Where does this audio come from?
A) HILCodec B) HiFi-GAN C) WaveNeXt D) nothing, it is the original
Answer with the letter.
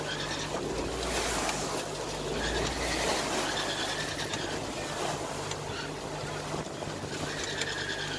D